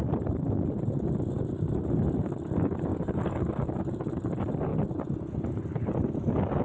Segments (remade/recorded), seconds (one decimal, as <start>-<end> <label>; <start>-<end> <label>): 0.0-2.9 recorded; 2.9-3.7 remade; 3.7-6.6 recorded

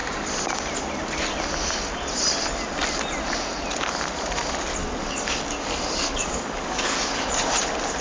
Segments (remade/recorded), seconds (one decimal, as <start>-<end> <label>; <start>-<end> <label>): 0.0-4.8 recorded; 4.8-7.5 remade; 7.5-8.0 recorded

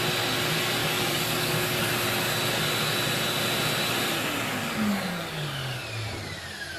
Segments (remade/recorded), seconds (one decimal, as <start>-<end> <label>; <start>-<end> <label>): 0.0-0.8 recorded; 0.8-1.9 remade; 1.9-4.6 recorded; 4.6-5.8 remade; 5.8-6.8 recorded

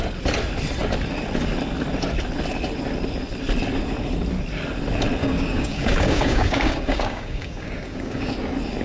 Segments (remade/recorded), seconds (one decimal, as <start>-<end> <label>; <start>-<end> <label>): 0.0-5.2 recorded; 5.2-8.3 remade; 8.3-8.8 recorded

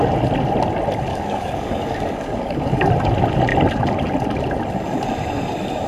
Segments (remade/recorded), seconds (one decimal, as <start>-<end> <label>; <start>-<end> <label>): 0.0-1.1 recorded; 1.1-2.9 remade; 2.9-5.9 recorded

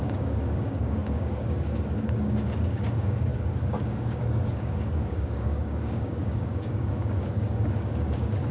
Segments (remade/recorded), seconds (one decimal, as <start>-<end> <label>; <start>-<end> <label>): 0.0-8.5 remade